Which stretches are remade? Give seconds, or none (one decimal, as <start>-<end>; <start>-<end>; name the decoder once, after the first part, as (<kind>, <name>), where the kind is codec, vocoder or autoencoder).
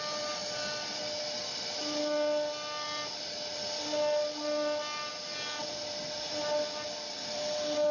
none